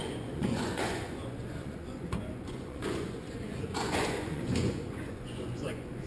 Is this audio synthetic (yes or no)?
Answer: yes